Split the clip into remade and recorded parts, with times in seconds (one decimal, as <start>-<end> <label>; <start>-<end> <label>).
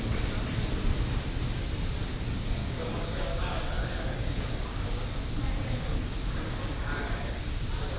0.0-2.6 recorded; 2.6-7.4 remade; 7.4-8.0 recorded